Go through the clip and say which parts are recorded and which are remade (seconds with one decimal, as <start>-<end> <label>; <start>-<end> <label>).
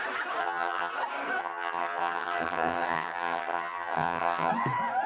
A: 0.0-0.4 recorded; 0.4-0.9 remade; 0.9-1.4 recorded; 1.4-4.5 remade; 4.5-5.1 recorded